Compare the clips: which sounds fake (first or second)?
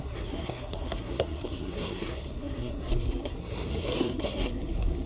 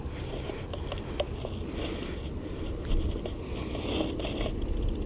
first